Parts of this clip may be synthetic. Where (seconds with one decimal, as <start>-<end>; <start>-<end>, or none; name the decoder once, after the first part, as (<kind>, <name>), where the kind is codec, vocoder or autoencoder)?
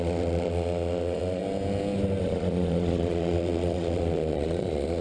0.0-1.4 (vocoder, Vocos); 2.2-5.0